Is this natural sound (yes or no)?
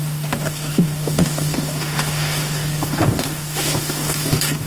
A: no